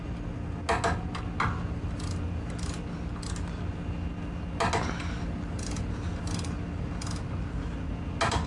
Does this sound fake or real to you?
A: real